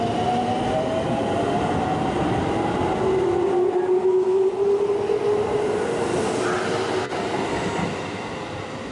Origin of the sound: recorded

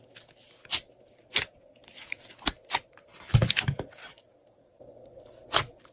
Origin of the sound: recorded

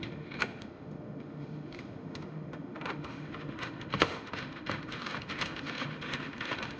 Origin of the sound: remade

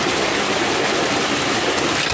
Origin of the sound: recorded